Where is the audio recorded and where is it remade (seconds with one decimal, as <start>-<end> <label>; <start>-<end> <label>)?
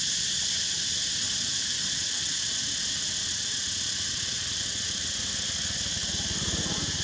0.0-7.0 recorded